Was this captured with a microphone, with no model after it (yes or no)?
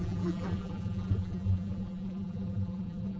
no